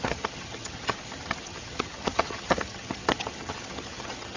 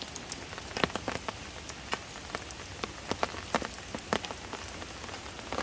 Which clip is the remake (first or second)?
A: first